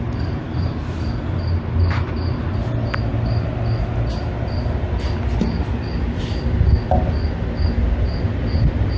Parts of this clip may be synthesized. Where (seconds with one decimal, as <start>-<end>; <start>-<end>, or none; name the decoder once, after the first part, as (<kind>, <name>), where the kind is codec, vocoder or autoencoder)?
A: none